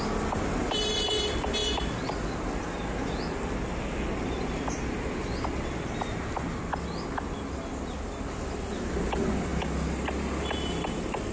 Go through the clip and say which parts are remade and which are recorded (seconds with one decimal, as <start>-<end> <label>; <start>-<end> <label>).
0.0-11.3 recorded